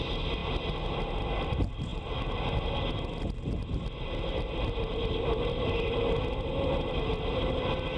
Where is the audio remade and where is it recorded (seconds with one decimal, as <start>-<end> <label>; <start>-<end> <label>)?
0.0-8.0 recorded

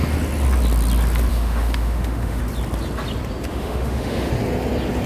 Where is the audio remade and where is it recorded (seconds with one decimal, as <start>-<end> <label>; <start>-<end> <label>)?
0.0-1.3 recorded; 1.3-2.4 remade; 2.4-3.5 recorded; 3.5-4.3 remade; 4.3-5.1 recorded

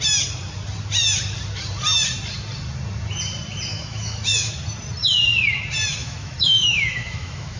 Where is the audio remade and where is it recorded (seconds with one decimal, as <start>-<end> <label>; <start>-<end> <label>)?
0.0-3.7 recorded; 3.7-4.5 remade; 4.5-6.0 recorded; 6.0-7.6 remade

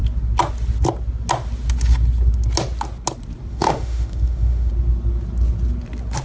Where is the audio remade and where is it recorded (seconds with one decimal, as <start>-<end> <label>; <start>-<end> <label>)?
0.0-3.5 recorded; 3.5-4.7 remade; 4.7-6.2 recorded